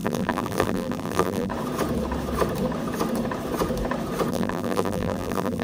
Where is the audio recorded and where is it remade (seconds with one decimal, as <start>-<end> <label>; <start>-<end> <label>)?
0.0-1.5 remade; 1.5-4.3 recorded; 4.3-5.6 remade